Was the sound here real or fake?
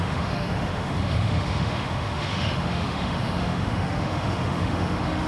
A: fake